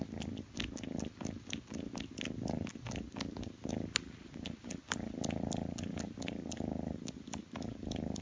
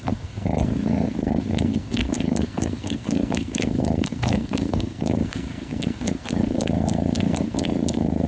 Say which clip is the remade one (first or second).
second